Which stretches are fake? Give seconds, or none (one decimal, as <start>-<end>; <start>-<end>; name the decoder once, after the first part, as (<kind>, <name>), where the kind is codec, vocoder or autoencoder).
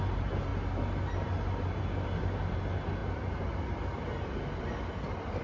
none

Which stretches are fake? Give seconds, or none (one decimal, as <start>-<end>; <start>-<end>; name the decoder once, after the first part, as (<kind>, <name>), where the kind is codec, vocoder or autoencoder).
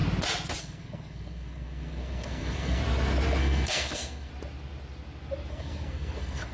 0.6-2.8 (codec, SNAC); 3.4-4.3; 5.5-6.5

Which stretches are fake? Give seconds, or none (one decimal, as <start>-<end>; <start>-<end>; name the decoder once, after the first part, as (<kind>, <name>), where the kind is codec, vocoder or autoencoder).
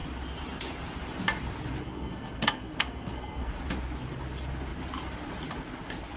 1.8-3.5 (codec, SNAC)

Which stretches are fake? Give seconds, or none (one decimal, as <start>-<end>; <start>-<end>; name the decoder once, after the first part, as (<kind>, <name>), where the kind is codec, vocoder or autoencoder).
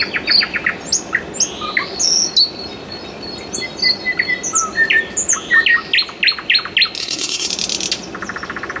7.0-7.5 (codec, SNAC)